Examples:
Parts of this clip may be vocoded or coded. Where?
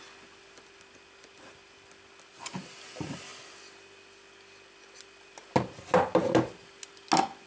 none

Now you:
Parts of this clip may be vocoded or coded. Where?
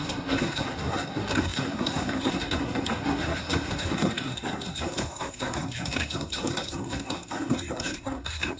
0.0-8.6 (codec, SNAC)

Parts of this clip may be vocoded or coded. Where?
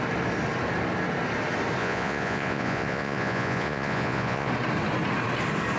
1.8-4.5 (vocoder, Vocos)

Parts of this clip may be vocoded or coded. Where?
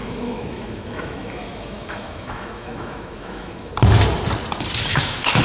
0.0-3.7 (autoencoder, DAC-VAE); 4.9-5.4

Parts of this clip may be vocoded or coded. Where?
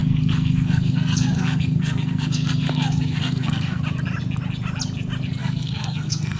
0.0-3.8 (codec, SNAC); 5.4-6.4